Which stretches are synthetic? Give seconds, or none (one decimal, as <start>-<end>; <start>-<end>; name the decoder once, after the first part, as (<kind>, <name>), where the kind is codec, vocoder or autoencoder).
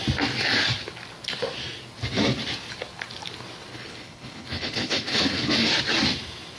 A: 3.7-5.5 (codec, HILCodec)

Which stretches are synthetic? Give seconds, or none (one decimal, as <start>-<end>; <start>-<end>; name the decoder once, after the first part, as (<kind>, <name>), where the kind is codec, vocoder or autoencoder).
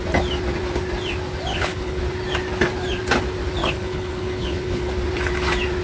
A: 1.5-2.0 (codec, HILCodec); 3.6-4.9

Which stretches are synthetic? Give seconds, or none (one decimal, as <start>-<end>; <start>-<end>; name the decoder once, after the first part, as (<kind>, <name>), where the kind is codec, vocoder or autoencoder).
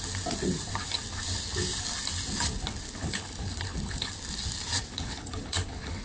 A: 3.0-4.1 (codec, HILCodec); 4.9-6.0